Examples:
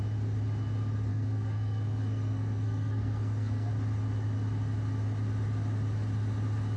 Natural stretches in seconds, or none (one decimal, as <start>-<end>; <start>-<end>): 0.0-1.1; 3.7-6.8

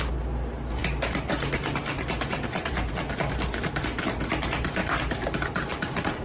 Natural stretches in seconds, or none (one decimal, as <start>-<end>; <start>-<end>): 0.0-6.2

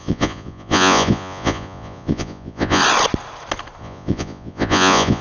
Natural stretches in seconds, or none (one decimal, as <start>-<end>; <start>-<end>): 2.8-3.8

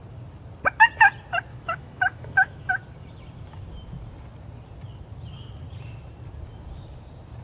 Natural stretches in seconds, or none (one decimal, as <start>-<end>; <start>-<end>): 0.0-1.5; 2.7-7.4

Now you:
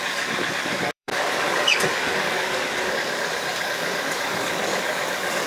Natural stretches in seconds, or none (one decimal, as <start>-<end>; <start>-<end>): none